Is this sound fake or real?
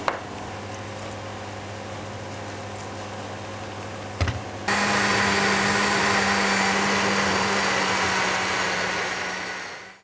real